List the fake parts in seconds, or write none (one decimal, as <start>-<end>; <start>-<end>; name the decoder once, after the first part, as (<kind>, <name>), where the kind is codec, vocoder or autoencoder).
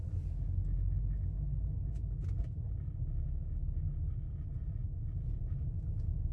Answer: 4.8-5.5 (vocoder, Vocos)